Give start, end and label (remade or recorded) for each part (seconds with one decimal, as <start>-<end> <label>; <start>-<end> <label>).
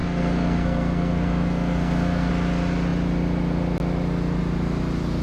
0.0-2.3 remade; 2.3-5.2 recorded